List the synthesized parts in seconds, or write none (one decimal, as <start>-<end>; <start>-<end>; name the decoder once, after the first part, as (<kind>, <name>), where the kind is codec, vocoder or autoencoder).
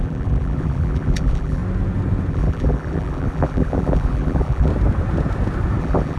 0.0-1.6 (vocoder, BigVGAN v2); 2.3-4.7; 5.8-6.2